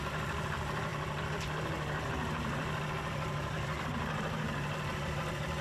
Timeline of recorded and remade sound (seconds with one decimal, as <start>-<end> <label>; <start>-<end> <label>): 0.0-5.6 recorded